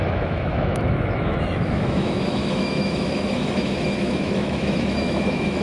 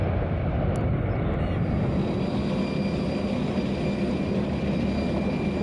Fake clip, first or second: first